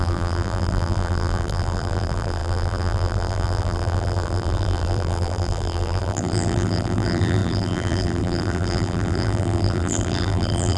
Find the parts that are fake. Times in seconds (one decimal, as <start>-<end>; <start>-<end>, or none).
0.0-10.8